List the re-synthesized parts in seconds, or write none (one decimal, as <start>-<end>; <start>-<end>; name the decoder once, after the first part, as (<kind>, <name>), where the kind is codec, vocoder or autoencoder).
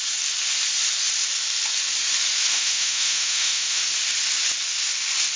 2.5-3.8 (autoencoder, DAC-VAE)